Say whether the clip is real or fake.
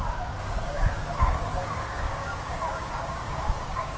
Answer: fake